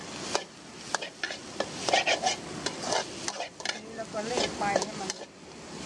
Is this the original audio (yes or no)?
yes